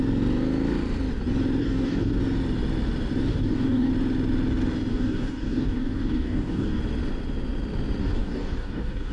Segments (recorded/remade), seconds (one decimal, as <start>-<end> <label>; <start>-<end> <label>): 0.0-1.6 recorded; 1.6-2.2 remade; 2.2-3.3 recorded; 3.3-3.9 remade; 3.9-4.9 recorded; 4.9-6.8 remade; 6.8-8.0 recorded; 8.0-9.1 remade